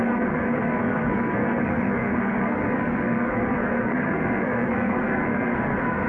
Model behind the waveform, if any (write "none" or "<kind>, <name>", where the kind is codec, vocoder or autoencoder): codec, SNAC